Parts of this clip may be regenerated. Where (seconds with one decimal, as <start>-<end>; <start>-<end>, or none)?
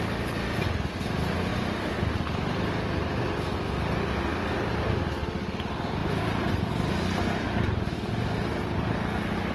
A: 1.5-2.6; 6.0-6.9